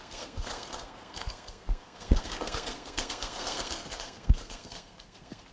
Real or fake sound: fake